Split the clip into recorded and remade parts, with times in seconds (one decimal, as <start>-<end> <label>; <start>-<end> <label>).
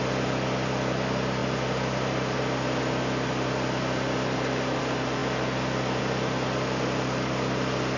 0.0-8.0 recorded